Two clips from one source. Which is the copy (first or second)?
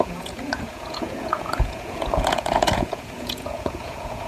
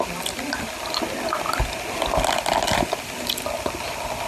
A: first